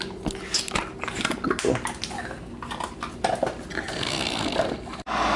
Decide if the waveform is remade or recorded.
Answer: recorded